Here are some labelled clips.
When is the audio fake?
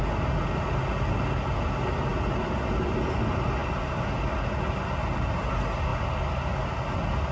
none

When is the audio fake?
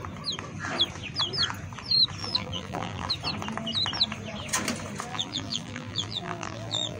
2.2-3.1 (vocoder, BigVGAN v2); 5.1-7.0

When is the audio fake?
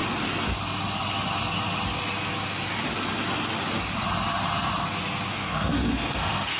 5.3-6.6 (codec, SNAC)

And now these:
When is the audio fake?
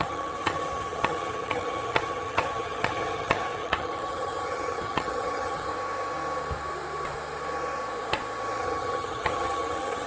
0.0-5.7 (vocoder, HiFi-GAN); 8.6-10.1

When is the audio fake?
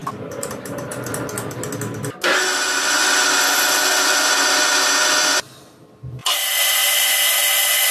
0.0-1.1 (vocoder, BigVGAN v2); 6.2-7.9